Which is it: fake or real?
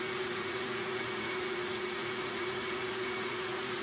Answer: fake